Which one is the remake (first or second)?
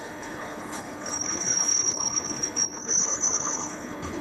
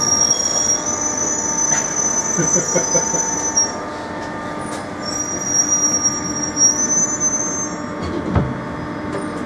first